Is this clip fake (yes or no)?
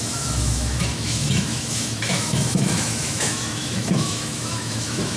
yes